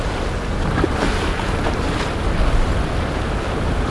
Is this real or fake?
real